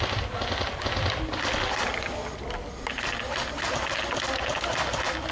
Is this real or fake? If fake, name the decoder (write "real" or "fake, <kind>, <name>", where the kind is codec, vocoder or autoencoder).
real